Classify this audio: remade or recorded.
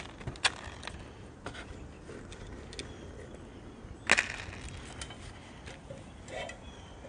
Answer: recorded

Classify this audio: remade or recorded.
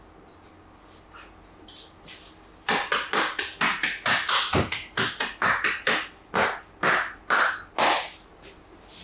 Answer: recorded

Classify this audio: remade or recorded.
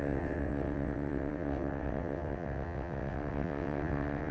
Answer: remade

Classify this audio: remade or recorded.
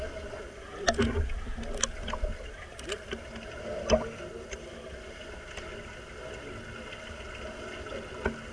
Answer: recorded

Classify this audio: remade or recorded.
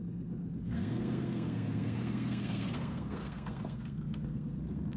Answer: remade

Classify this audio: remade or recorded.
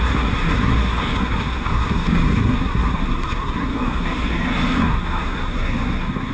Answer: remade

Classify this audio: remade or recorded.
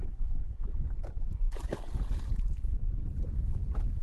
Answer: remade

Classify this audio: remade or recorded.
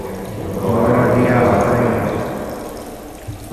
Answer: recorded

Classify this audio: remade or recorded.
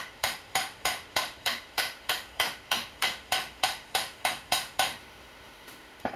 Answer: remade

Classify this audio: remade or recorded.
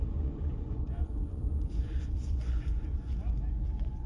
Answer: remade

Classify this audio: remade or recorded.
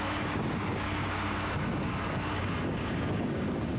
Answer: remade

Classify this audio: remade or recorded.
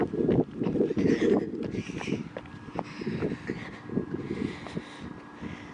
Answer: recorded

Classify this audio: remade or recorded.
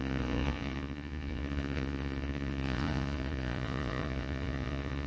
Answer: remade